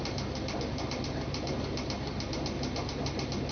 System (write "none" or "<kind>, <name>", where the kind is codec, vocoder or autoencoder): none